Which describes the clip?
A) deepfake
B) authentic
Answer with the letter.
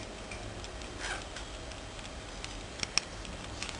B